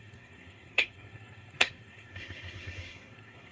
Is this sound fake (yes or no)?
yes